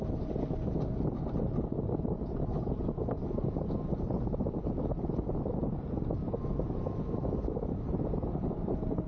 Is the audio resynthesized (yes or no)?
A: no